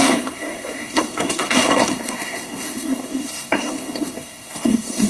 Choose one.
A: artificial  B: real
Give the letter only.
A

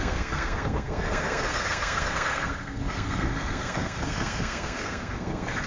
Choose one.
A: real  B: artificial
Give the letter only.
B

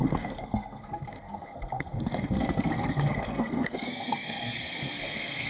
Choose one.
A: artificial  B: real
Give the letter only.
A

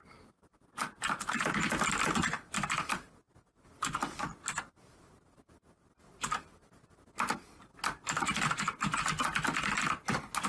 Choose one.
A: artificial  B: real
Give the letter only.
B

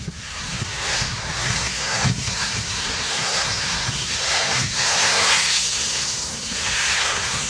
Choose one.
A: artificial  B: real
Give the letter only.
A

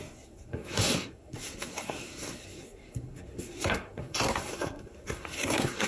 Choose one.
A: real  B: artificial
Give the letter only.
B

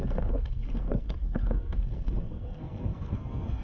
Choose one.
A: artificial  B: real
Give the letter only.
A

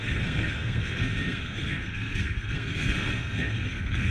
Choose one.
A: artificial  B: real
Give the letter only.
A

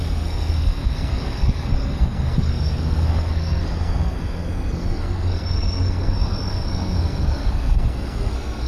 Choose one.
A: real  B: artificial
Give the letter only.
B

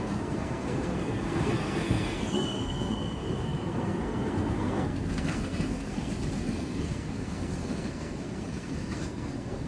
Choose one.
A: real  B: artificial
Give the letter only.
B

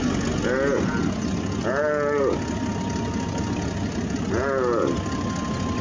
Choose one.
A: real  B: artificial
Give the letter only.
A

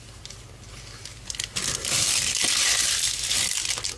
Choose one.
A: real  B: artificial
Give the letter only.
A